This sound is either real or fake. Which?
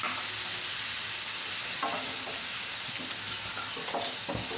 real